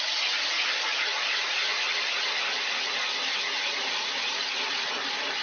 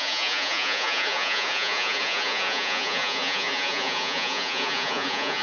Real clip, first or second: first